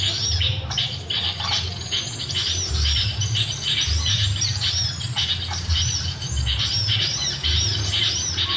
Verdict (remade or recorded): remade